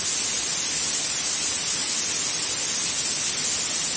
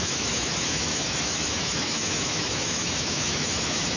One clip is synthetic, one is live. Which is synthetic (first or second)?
second